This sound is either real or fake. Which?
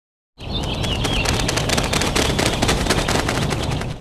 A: real